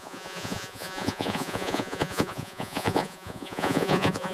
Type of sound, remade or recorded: remade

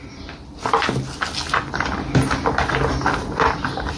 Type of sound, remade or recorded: recorded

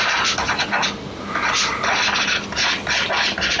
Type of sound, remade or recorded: recorded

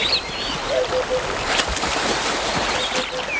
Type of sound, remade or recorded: recorded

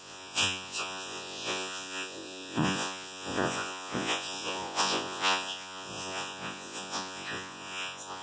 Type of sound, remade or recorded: remade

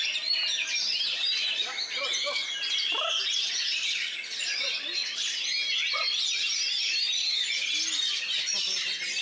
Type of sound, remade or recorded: recorded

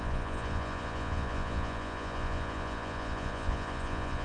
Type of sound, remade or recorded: remade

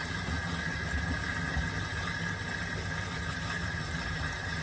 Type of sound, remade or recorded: recorded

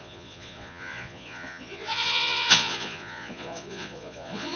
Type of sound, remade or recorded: remade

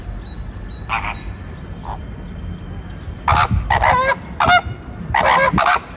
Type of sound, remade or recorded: recorded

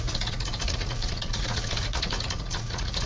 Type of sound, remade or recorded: remade